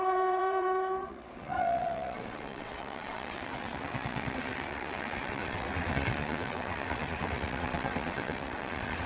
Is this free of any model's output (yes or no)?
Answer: no